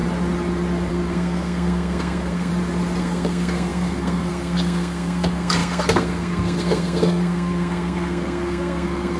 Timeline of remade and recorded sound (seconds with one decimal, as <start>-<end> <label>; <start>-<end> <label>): 0.0-0.9 recorded; 0.9-2.5 remade; 2.5-3.0 recorded; 3.0-9.2 remade